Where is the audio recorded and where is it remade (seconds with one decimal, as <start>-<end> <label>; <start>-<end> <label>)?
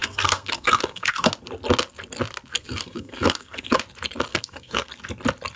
0.0-1.3 remade; 1.3-2.5 recorded; 2.5-3.8 remade; 3.8-4.3 recorded; 4.3-4.9 remade; 4.9-5.6 recorded